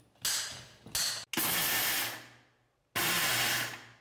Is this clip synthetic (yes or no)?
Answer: no